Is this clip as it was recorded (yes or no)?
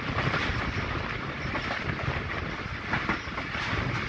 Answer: yes